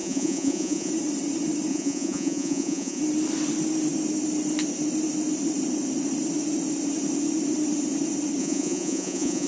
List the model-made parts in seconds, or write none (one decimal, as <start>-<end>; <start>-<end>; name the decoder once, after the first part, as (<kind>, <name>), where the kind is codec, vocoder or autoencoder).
0.0-0.9 (vocoder, Vocos); 1.7-3.0; 8.4-9.5